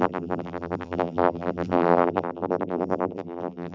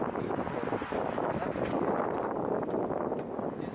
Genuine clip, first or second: second